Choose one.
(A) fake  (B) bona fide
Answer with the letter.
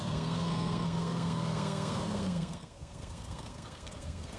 A